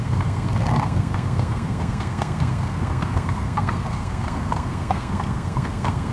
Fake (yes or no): yes